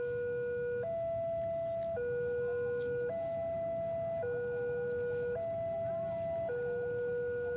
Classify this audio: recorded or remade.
recorded